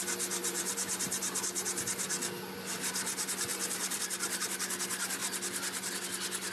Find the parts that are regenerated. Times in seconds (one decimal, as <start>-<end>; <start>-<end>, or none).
0.4-1.4; 3.5-4.0